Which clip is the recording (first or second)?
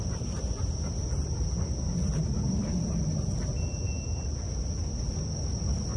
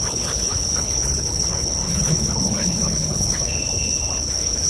first